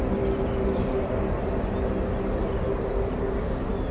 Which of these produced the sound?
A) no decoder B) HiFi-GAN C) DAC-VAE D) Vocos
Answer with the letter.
A